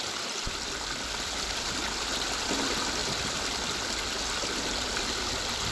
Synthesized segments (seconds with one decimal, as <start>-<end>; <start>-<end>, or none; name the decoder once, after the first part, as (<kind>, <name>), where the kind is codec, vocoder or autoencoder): none